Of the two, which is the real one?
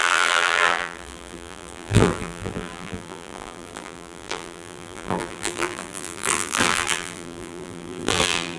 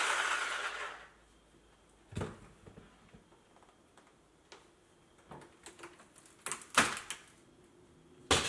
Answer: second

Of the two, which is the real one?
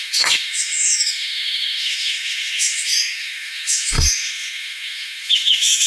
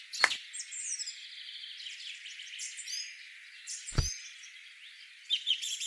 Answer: second